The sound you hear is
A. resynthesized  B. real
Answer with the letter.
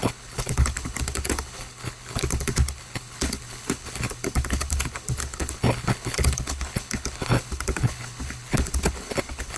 A